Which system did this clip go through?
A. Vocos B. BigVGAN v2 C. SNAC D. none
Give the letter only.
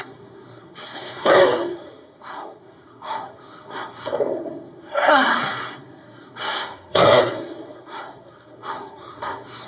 C